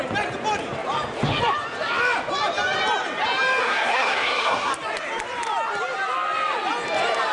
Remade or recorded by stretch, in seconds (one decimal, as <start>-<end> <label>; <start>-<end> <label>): 0.0-3.6 recorded; 3.6-4.7 remade; 4.7-7.3 recorded